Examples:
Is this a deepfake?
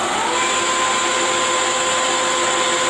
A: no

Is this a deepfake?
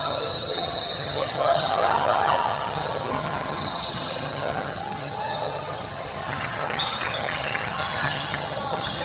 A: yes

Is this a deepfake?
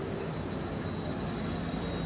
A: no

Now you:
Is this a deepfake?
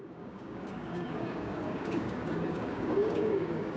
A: yes